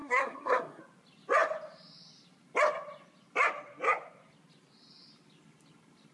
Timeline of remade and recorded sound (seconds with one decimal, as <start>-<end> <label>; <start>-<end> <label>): 0.0-0.8 remade; 0.8-6.1 recorded